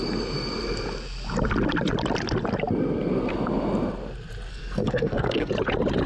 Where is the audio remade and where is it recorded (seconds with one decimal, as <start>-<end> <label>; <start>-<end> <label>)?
0.0-4.5 recorded; 4.5-5.5 remade; 5.5-6.1 recorded